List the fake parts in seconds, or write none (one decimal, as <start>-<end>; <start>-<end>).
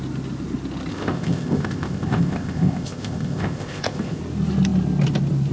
0.9-4.2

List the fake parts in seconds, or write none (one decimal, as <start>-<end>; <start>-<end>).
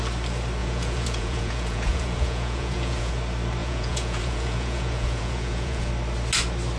0.6-3.1; 3.6-5.9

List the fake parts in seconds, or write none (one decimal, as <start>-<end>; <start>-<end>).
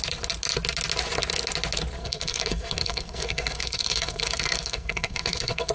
2.0-5.7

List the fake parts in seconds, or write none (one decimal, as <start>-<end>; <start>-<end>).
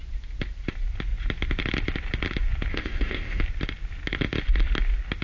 2.7-3.4